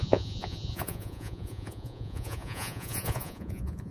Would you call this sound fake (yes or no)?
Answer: yes